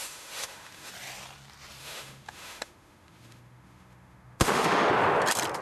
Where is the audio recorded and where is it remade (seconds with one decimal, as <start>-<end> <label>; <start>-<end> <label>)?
0.0-0.9 remade; 0.9-1.8 recorded; 1.8-4.9 remade; 4.9-5.6 recorded